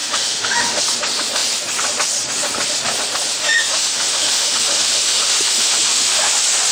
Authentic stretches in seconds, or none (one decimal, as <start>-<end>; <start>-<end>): 0.8-3.4; 6.3-6.7